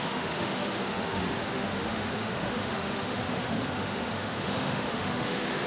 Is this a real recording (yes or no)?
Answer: no